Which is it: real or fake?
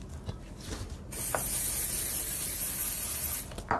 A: real